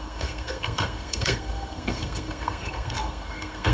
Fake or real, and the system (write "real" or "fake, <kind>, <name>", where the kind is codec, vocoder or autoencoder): fake, codec, SNAC